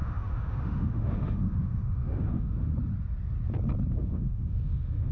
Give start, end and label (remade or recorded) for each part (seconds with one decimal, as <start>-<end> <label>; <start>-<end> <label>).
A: 0.0-2.7 remade; 2.7-3.9 recorded; 3.9-5.1 remade